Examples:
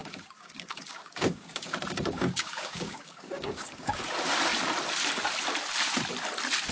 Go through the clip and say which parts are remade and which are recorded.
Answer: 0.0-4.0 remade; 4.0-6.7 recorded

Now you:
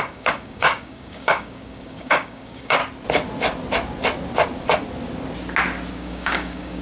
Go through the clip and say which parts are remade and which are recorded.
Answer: 0.0-2.8 remade; 2.8-5.9 recorded; 5.9-6.8 remade

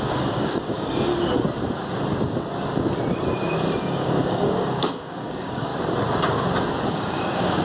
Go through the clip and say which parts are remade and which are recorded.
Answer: 0.0-1.1 remade; 1.1-3.8 recorded; 3.8-5.7 remade; 5.7-6.9 recorded; 6.9-7.6 remade

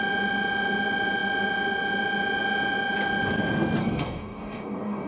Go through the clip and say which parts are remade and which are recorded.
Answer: 0.0-3.8 recorded; 3.8-5.1 remade

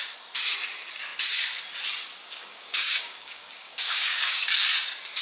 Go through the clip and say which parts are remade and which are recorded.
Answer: 0.0-2.2 recorded; 2.2-4.4 remade; 4.4-5.2 recorded

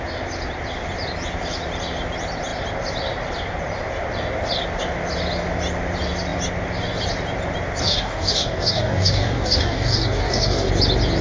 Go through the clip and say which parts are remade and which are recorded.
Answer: 0.0-7.8 recorded; 7.8-10.7 remade; 10.7-11.2 recorded

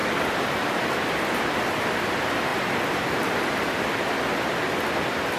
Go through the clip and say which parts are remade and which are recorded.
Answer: 0.0-5.4 recorded